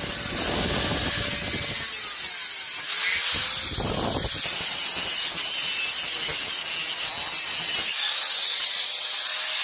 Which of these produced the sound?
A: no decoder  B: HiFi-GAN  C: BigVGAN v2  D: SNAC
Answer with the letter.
A